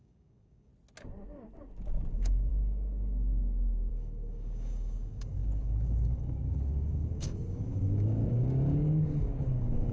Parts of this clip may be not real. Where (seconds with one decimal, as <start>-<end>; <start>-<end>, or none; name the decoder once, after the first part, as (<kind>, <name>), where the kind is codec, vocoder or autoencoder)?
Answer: 0.0-0.7 (codec, DAC); 2.1-9.9